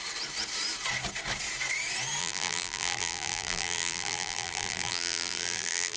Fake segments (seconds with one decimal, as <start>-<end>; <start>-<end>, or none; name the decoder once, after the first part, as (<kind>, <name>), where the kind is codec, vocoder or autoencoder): 2.2-6.0 (vocoder, BigVGAN v2)